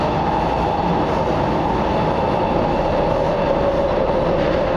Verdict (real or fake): real